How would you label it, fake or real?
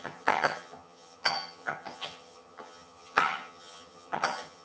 fake